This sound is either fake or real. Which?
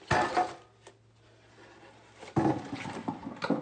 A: real